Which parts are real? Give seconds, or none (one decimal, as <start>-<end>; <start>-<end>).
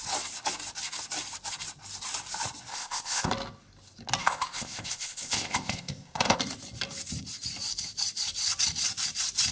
0.0-2.7; 3.3-4.2; 6.4-9.5